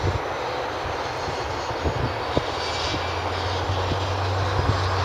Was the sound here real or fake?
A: real